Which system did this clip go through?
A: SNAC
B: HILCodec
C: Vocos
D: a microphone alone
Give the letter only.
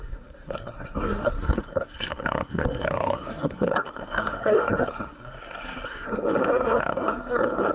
A